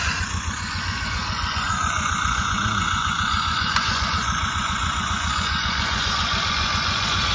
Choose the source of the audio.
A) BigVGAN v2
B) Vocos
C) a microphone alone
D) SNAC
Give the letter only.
B